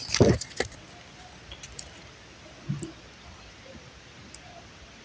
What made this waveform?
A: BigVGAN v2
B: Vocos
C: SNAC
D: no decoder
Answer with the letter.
D